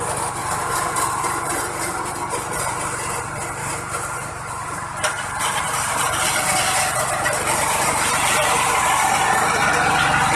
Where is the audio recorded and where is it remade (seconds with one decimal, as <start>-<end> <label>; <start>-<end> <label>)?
0.0-0.4 recorded; 0.4-3.2 remade; 3.2-3.6 recorded; 3.6-5.9 remade; 5.9-6.6 recorded; 6.6-9.2 remade; 9.2-10.4 recorded